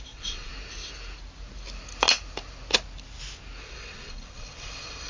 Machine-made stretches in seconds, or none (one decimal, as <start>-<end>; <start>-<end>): 0.0-0.5; 3.6-5.1